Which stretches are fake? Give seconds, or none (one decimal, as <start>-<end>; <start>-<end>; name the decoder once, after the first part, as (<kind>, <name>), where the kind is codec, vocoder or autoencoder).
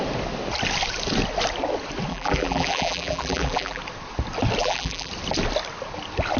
2.1-3.8 (vocoder, BigVGAN v2); 4.6-5.1